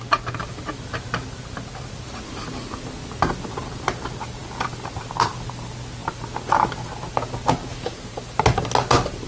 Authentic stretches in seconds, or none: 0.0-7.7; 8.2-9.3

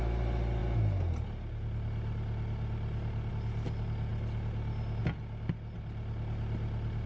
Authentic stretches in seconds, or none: 0.0-7.1

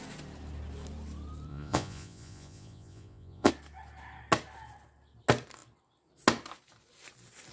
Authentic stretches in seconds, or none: 0.0-1.5; 3.5-7.5

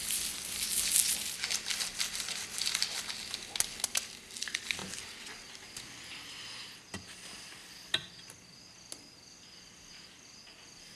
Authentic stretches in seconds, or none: 0.0-11.0

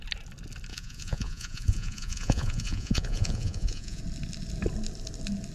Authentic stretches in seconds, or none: 0.0-0.7; 4.0-5.5

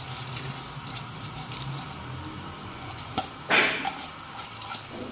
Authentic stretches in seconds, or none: 0.0-2.6; 3.2-5.1

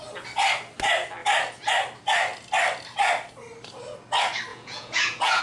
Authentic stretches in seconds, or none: 0.0-4.5

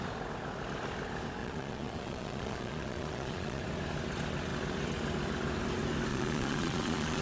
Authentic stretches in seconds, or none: 0.0-1.4; 3.6-6.1